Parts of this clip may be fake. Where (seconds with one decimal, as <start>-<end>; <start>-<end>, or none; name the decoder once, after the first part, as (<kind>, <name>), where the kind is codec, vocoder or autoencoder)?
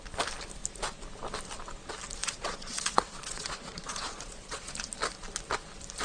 2.2-4.7 (vocoder, Vocos)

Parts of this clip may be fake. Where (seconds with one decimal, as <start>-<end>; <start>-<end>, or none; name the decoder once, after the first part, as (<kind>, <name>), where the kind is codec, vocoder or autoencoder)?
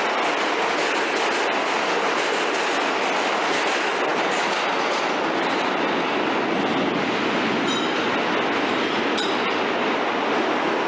none